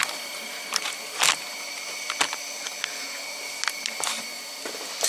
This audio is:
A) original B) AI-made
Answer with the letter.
A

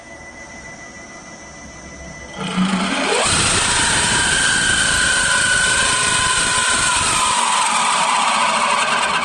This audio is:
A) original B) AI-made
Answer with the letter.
B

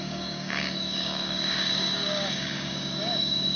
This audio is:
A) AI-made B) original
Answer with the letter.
A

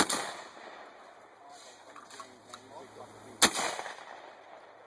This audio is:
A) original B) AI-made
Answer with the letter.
A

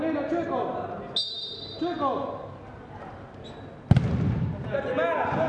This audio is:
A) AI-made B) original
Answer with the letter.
B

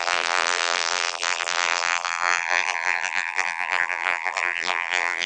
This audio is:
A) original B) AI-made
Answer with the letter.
B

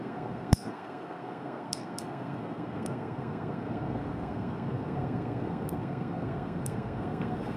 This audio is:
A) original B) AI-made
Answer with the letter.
B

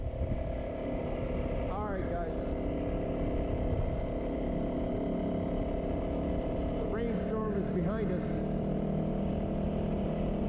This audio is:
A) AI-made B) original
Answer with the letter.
B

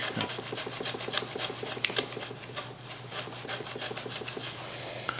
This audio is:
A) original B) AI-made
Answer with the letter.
A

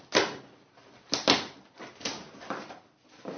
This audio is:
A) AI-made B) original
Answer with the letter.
B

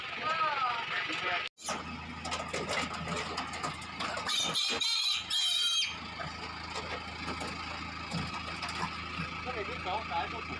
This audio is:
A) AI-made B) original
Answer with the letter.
B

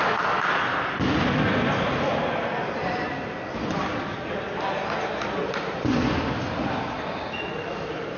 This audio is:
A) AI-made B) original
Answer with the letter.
B